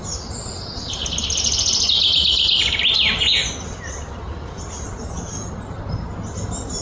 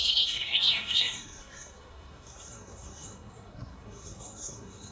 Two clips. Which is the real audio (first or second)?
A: first